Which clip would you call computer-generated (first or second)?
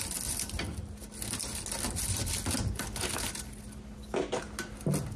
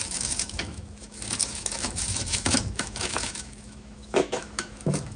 second